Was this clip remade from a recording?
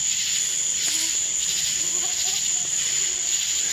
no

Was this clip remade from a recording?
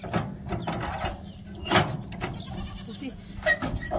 no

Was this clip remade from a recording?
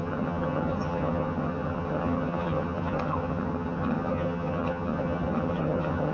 yes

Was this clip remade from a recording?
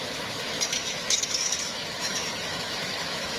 yes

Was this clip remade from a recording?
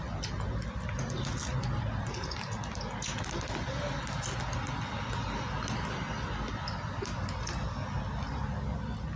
no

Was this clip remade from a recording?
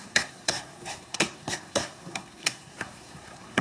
yes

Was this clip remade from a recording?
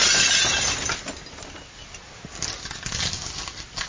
no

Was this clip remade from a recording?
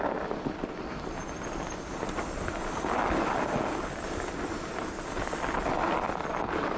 no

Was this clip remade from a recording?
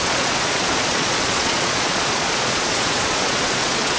yes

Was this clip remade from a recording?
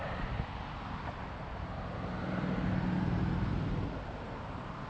no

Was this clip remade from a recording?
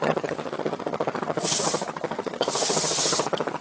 yes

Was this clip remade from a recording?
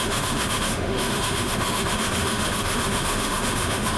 yes